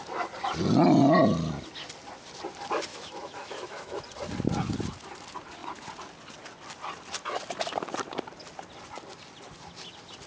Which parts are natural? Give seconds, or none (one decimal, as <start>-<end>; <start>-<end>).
0.0-2.9; 4.0-10.3